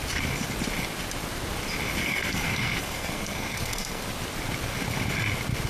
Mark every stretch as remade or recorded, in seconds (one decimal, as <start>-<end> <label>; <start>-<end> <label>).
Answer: 0.0-2.0 recorded; 2.0-4.0 remade; 4.0-5.7 recorded